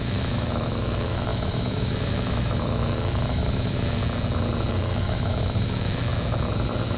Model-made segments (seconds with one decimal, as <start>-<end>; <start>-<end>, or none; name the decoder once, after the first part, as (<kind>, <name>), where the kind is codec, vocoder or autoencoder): 0.0-4.0 (autoencoder, DAC-VAE); 4.7-6.1